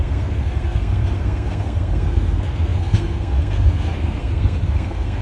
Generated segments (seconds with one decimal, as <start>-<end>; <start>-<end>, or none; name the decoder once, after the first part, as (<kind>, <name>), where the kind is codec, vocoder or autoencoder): 0.0-5.2 (codec, SNAC)